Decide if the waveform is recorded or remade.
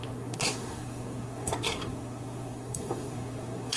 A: remade